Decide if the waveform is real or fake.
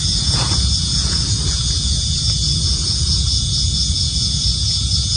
fake